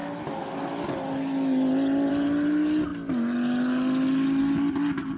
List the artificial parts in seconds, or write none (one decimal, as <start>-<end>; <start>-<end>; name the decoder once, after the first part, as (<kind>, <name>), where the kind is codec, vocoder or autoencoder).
none